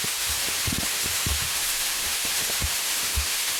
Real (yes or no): no